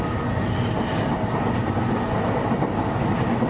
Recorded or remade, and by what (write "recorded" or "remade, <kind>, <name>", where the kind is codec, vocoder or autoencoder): recorded